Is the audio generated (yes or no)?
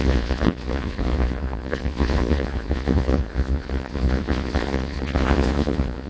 yes